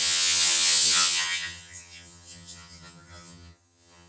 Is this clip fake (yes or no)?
yes